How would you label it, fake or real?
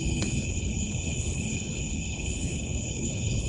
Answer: fake